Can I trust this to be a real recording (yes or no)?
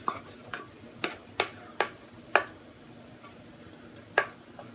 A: yes